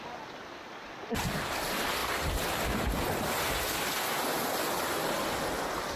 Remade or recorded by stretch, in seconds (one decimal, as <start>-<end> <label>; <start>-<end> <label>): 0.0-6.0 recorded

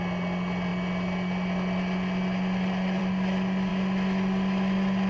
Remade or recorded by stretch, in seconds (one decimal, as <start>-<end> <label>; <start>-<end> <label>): 0.0-5.1 recorded

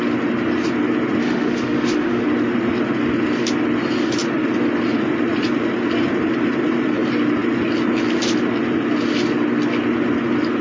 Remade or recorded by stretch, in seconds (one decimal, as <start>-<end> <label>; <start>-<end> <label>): 0.0-1.2 recorded; 1.2-2.2 remade; 2.2-10.6 recorded

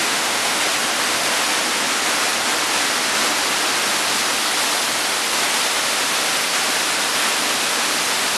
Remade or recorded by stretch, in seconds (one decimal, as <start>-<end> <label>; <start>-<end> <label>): 0.0-0.6 remade; 0.6-8.4 recorded

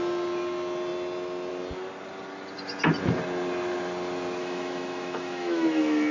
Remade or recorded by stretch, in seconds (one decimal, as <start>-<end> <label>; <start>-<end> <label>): 0.0-4.4 recorded; 4.4-6.1 remade

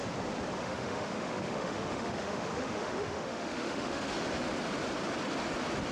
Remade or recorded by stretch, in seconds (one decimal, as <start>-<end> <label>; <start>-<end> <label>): 0.0-0.6 recorded; 0.6-4.1 remade; 4.1-5.9 recorded